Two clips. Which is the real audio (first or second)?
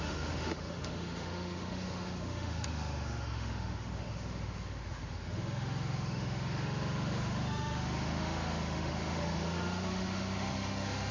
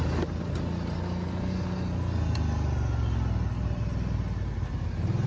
second